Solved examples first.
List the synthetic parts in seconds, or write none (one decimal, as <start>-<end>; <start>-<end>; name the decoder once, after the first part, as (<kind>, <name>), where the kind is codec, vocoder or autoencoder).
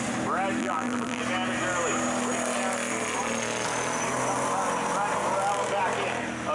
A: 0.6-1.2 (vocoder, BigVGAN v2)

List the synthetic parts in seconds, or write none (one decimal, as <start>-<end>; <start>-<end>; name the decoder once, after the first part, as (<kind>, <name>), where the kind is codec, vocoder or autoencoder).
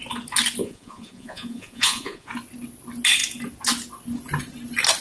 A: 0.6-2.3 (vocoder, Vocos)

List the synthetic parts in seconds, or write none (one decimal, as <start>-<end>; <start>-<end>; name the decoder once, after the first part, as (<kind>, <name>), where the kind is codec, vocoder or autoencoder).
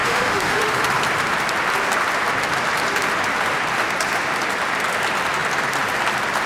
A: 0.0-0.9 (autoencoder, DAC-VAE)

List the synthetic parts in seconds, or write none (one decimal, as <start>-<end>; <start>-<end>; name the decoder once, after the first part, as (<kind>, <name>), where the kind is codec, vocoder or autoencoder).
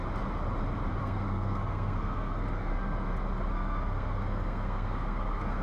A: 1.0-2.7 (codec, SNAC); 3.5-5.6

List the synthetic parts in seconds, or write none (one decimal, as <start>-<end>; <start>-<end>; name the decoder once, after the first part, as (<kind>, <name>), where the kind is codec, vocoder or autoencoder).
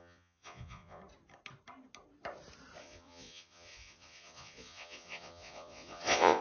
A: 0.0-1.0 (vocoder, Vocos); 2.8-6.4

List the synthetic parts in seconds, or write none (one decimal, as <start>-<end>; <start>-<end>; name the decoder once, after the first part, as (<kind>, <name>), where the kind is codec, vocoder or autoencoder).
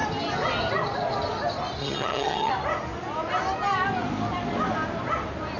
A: 1.8-2.5 (vocoder, HiFi-GAN)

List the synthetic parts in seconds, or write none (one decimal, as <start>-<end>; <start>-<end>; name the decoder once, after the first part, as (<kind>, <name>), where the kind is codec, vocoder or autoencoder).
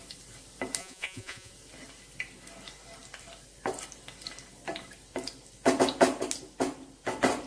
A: 0.8-1.5 (vocoder, Vocos)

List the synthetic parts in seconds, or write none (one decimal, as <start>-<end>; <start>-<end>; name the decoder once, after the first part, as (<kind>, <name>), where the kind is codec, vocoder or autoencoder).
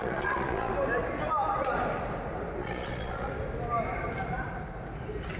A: 0.0-0.7 (vocoder, Vocos); 2.6-3.3